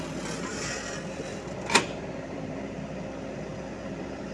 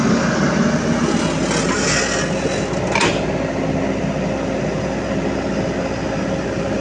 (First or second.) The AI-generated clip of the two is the first